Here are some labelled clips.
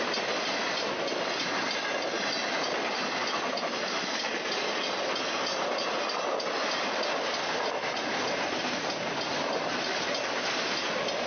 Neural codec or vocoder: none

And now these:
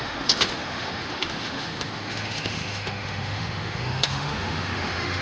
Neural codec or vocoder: autoencoder, DAC-VAE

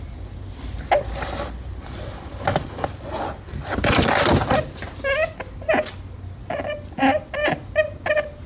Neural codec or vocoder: none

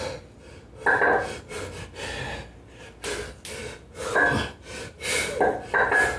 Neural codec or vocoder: none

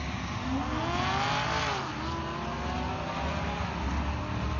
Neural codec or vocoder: none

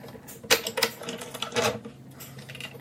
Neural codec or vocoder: none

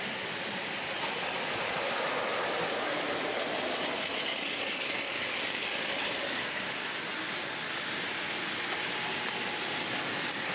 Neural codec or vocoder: none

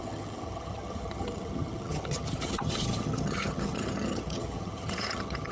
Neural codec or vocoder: vocoder, HiFi-GAN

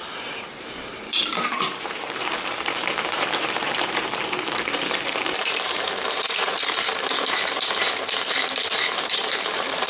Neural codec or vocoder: vocoder, BigVGAN v2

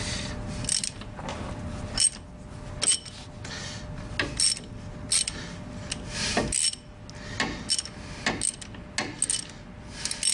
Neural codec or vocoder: none